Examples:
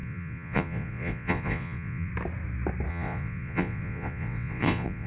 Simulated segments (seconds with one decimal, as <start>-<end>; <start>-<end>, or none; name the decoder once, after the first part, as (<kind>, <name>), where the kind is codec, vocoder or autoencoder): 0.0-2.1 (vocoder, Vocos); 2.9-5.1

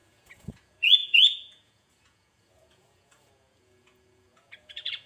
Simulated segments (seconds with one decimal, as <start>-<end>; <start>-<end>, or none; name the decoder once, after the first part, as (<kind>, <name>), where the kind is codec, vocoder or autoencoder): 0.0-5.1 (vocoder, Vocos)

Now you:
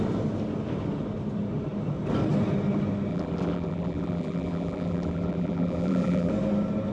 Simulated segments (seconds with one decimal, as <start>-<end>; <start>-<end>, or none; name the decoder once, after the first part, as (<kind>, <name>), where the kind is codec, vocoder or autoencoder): 3.1-6.3 (vocoder, BigVGAN v2)

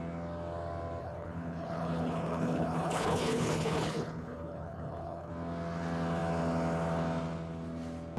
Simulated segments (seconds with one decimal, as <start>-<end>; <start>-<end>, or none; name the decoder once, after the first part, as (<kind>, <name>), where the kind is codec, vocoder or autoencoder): 1.0-5.3 (codec, HILCodec)

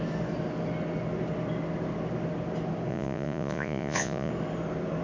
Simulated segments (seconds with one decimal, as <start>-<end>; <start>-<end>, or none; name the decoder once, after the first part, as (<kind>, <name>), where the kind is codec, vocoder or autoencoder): 2.9-4.3 (vocoder, Vocos)

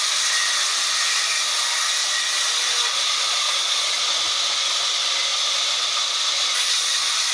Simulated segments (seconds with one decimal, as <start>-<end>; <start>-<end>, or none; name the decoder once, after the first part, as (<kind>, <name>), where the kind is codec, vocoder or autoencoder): 2.0-4.0 (vocoder, Vocos)

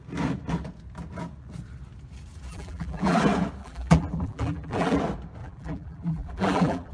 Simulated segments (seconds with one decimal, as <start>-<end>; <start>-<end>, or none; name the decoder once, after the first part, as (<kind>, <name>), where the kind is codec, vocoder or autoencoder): 2.5-3.2 (vocoder, BigVGAN v2); 3.6-5.0; 5.4-6.9